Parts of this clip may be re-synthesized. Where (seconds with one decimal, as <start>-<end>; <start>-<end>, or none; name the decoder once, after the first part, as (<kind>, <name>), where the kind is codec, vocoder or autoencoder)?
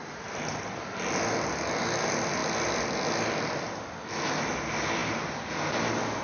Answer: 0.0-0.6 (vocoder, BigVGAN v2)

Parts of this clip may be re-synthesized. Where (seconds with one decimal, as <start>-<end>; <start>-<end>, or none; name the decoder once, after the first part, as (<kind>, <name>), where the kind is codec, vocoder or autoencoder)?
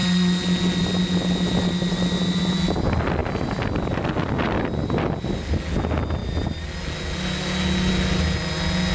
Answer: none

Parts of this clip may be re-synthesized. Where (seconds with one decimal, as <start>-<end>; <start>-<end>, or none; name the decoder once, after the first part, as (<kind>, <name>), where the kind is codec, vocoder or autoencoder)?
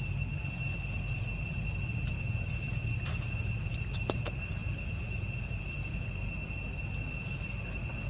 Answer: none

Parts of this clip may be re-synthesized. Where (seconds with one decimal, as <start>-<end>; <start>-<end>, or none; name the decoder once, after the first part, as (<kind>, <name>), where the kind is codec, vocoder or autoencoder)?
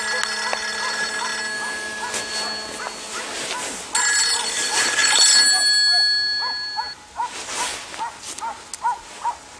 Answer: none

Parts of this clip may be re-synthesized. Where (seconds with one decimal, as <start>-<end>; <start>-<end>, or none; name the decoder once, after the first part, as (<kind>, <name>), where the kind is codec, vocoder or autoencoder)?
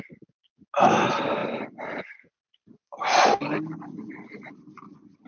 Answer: 1.4-4.4 (vocoder, BigVGAN v2)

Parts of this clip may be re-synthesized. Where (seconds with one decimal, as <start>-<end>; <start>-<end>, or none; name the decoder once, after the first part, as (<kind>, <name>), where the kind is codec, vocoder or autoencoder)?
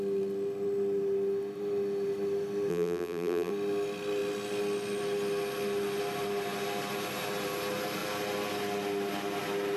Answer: 2.7-3.5 (vocoder, BigVGAN v2)